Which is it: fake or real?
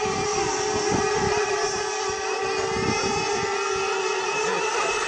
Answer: real